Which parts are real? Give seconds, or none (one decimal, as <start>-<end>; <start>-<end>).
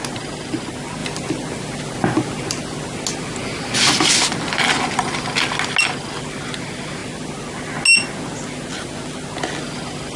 0.0-10.2